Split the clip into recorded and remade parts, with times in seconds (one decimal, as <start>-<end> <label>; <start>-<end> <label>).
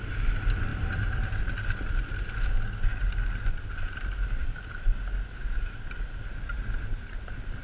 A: 0.0-7.6 recorded